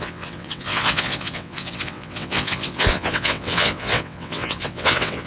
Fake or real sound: fake